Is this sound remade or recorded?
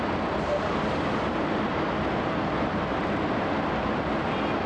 recorded